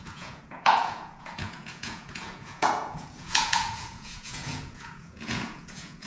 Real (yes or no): no